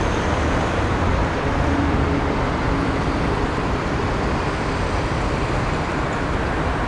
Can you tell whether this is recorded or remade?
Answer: remade